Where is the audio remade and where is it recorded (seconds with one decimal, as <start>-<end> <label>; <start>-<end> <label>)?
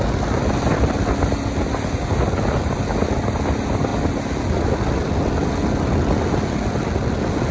0.0-7.5 recorded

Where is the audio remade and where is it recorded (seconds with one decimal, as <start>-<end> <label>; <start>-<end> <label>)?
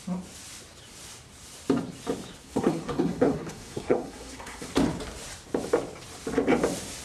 0.0-2.4 recorded; 2.4-4.7 remade; 4.7-7.0 recorded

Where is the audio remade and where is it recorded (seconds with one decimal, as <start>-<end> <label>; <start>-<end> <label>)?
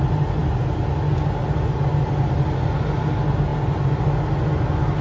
0.0-5.0 recorded